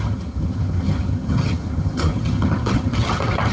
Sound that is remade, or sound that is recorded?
remade